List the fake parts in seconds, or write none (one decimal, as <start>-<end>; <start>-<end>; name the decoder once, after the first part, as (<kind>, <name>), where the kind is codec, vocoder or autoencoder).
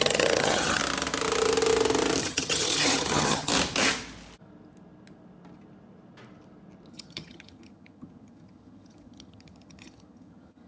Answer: 0.0-0.8 (vocoder, HiFi-GAN); 2.2-3.5; 6.9-10.7